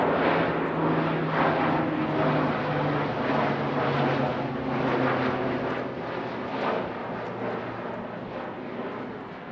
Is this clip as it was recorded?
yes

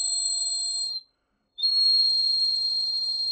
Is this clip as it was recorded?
no